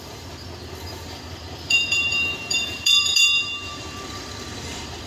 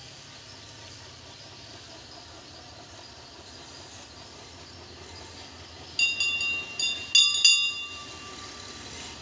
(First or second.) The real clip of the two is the second